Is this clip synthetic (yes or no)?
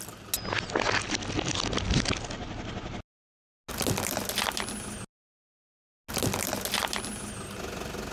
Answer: no